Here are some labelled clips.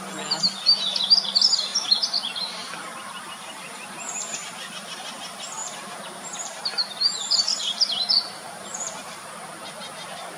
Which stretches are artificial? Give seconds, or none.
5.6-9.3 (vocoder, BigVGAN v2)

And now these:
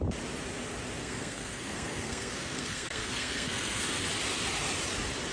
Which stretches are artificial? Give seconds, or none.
1.0-3.8 (codec, SNAC)